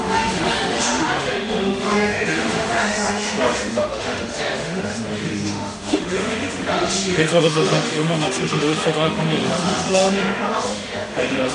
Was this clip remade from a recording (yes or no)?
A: yes